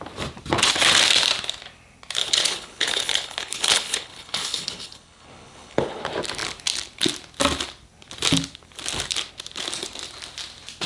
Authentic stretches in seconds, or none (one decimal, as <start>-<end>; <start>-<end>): 0.0-2.2; 6.0-10.9